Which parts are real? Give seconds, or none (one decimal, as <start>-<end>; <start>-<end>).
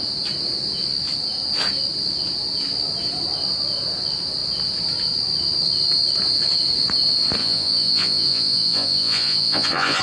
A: 0.0-7.4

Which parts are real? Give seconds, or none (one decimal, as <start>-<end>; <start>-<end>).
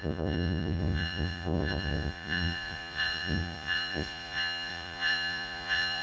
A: none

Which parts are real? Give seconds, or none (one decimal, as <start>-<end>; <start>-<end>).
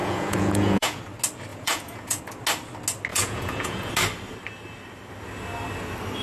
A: 1.0-1.5; 2.2-3.1; 3.9-6.2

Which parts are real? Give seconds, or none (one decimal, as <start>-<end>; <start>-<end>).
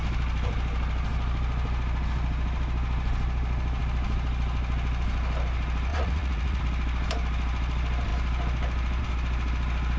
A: 0.0-5.9; 6.6-10.0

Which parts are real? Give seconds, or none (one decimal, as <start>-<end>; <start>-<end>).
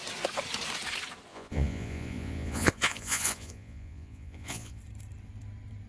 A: 0.0-1.3; 4.8-5.9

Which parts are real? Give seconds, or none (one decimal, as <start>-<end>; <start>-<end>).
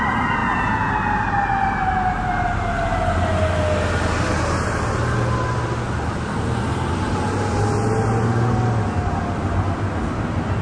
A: 0.0-0.4; 0.9-10.6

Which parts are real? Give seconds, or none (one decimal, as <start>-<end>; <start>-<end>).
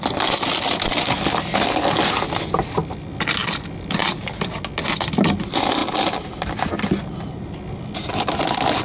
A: 0.0-8.8